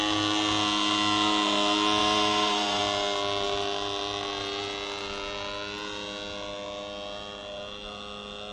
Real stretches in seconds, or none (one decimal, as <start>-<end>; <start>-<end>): 0.0-2.0; 2.8-8.5